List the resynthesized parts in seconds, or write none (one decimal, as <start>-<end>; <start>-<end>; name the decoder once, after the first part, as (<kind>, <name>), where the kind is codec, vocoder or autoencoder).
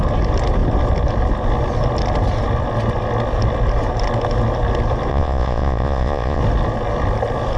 5.1-6.4 (vocoder, Vocos)